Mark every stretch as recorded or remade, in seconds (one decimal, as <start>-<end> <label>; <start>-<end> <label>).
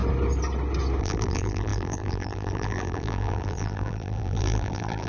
0.0-1.0 recorded; 1.0-5.1 remade